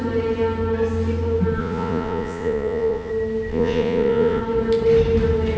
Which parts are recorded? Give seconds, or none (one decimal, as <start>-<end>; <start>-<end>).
0.0-1.6; 3.1-3.5; 4.4-5.6